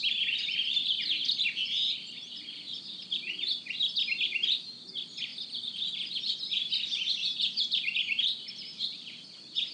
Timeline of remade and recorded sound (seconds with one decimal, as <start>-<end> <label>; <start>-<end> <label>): 0.0-9.7 recorded